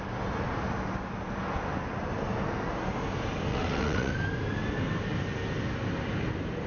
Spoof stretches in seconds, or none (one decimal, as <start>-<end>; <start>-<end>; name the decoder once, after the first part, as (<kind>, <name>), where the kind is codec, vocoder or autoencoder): 3.5-4.1 (vocoder, WaveNeXt)